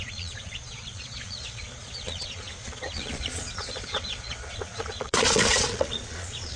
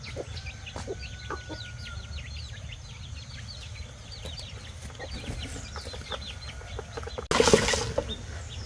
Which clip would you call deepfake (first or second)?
first